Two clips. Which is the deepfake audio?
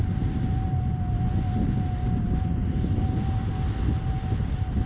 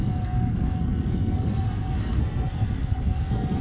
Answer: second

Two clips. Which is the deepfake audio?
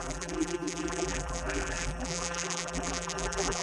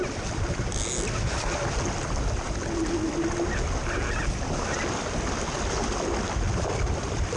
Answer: first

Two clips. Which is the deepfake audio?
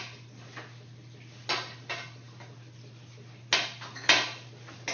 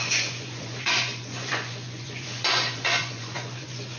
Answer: second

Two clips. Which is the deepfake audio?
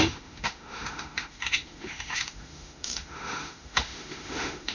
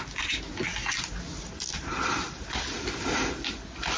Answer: first